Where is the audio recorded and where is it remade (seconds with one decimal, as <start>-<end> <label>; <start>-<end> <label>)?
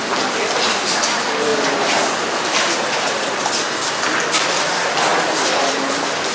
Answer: 0.0-6.3 recorded